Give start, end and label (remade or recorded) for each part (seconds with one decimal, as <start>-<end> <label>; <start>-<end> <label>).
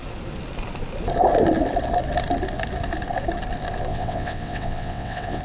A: 0.0-3.9 recorded; 3.9-5.4 remade